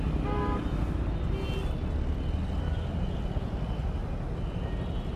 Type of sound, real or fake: real